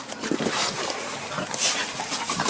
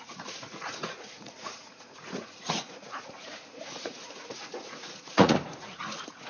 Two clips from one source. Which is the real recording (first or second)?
first